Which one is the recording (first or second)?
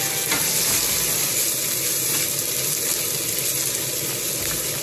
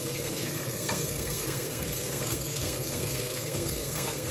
first